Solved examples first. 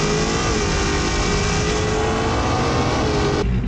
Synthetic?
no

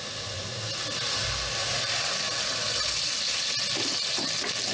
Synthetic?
no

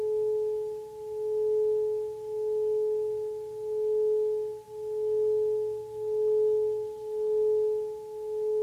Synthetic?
no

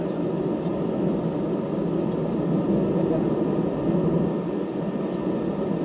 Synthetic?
no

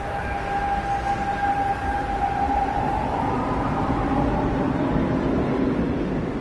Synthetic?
no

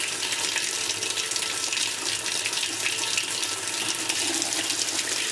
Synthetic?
no